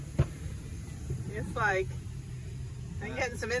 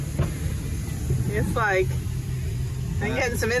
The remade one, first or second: first